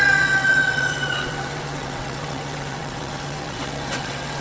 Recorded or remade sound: remade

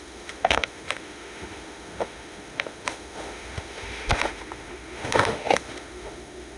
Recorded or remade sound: remade